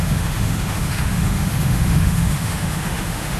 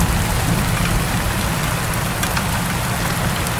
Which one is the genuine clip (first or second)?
second